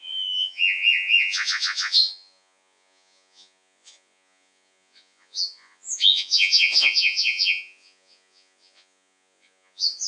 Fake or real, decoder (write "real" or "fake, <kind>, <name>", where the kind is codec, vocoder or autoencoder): fake, vocoder, Vocos